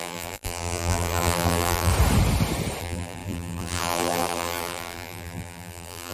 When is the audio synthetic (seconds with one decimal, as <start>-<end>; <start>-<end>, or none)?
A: 0.0-1.9; 2.8-6.1